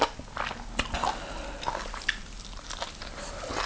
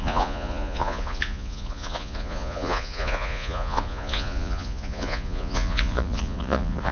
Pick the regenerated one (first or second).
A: second